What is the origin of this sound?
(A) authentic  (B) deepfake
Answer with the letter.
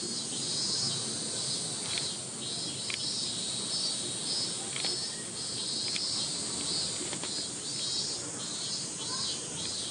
A